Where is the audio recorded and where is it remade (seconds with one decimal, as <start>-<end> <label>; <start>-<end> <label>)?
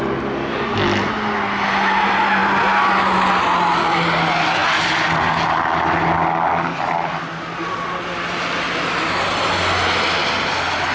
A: 0.0-10.9 recorded